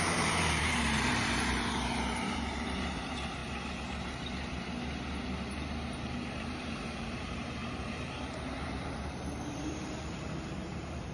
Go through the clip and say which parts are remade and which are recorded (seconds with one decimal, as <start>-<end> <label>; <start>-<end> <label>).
0.0-3.4 remade; 3.4-7.0 recorded; 7.0-11.1 remade